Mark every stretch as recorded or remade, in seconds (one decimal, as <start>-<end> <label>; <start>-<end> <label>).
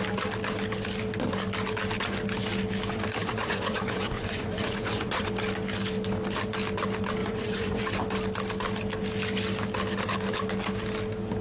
0.0-3.2 recorded; 3.2-5.3 remade; 5.3-7.2 recorded; 7.2-7.8 remade; 7.8-11.4 recorded